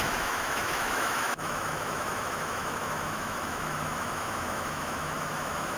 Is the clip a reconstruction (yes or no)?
yes